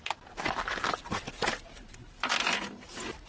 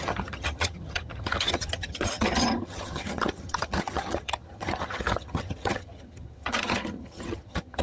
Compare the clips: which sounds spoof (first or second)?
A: second